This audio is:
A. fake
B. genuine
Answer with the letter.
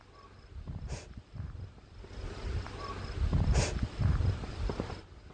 B